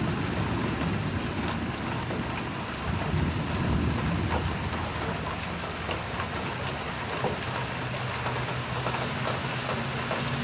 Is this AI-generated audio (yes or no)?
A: no